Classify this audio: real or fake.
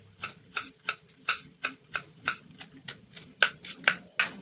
real